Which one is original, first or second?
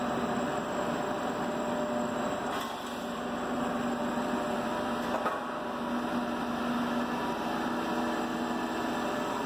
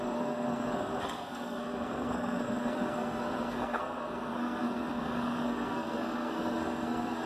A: first